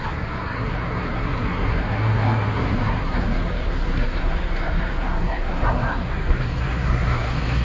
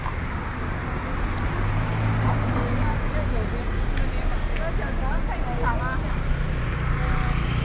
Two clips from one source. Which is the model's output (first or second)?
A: first